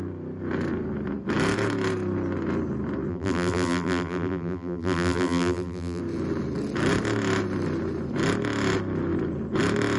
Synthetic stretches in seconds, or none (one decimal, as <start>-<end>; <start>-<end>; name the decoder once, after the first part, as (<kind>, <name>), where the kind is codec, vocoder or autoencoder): 3.1-6.0 (vocoder, BigVGAN v2)